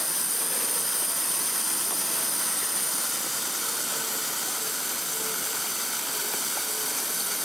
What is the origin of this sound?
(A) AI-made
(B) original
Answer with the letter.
B